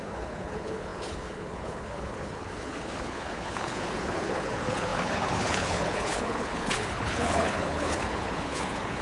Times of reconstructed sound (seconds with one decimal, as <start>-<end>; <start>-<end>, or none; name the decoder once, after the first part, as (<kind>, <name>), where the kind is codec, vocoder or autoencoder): 0.0-9.0 (codec, HILCodec)

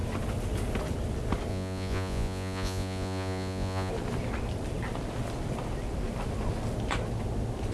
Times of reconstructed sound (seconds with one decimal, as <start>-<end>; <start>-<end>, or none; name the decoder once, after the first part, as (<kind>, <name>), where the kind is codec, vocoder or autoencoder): 1.5-3.9 (vocoder, Vocos)

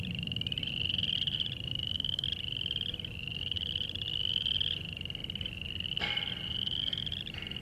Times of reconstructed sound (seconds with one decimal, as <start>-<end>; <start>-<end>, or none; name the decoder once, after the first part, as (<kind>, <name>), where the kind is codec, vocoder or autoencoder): 5.2-6.5 (vocoder, BigVGAN v2)